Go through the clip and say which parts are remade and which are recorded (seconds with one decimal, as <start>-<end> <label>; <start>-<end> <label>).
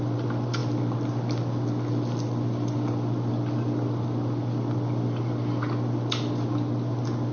0.0-7.3 recorded